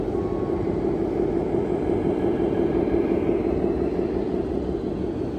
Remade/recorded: recorded